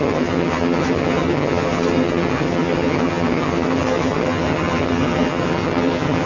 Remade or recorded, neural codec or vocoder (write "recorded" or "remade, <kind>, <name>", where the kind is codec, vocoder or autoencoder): remade, vocoder, HiFi-GAN